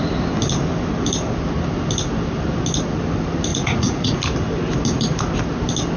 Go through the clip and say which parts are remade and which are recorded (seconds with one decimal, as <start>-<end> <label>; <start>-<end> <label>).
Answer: 0.0-3.5 recorded; 3.5-4.2 remade; 4.2-6.0 recorded